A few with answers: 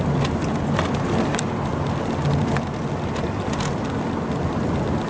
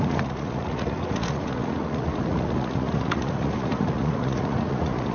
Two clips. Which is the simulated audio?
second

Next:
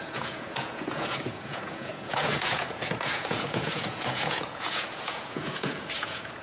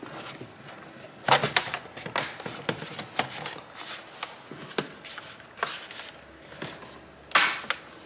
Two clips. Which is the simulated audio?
first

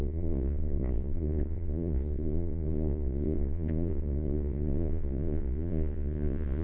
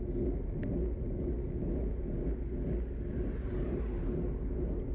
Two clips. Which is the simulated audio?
first